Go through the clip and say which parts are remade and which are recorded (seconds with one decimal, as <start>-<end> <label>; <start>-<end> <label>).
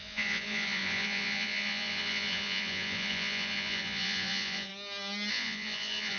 0.0-4.7 remade; 4.7-5.3 recorded; 5.3-6.2 remade